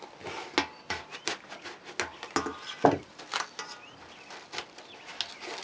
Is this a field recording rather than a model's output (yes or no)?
yes